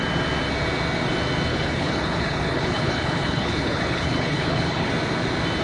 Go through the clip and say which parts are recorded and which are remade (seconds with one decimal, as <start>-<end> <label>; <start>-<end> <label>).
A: 0.0-1.5 recorded; 1.5-4.9 remade; 4.9-5.6 recorded